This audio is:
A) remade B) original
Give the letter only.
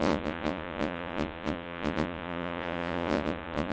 A